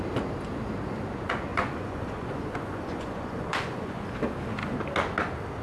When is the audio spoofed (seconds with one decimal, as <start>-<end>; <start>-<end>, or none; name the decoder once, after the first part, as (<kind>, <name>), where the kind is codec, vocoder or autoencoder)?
1.5-4.0 (vocoder, Vocos)